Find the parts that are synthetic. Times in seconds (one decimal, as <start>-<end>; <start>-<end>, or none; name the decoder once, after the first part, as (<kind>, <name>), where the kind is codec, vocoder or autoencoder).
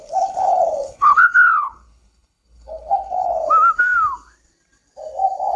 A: 0.0-3.4 (codec, HILCodec)